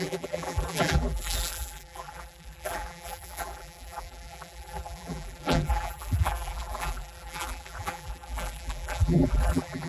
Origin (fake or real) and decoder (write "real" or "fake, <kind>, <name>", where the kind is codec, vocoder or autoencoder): fake, vocoder, BigVGAN v2